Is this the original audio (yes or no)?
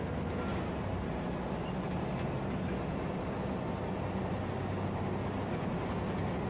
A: yes